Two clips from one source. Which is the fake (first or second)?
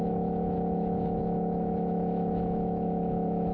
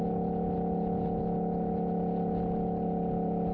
first